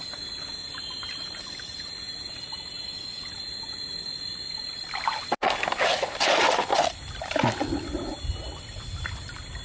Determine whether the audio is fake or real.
real